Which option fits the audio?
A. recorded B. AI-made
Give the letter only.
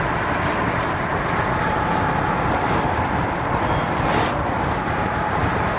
A